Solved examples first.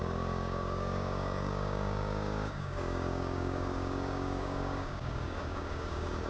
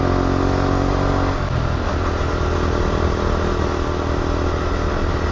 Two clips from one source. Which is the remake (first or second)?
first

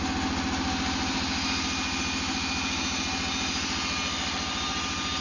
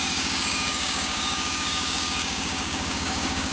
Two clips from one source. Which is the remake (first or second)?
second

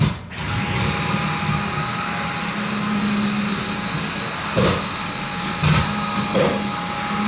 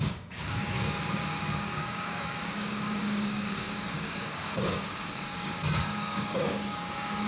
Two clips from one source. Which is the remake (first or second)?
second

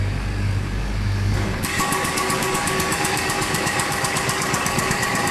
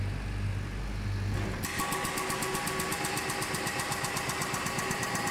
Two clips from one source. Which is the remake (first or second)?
first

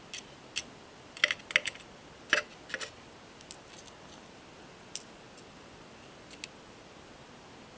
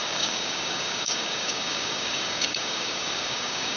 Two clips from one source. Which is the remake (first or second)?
second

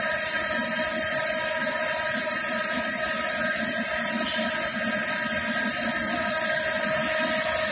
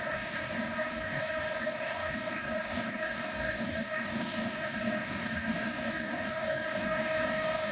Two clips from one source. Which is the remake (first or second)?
second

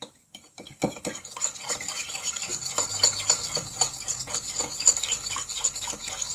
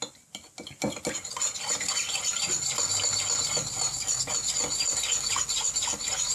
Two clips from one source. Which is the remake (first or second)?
first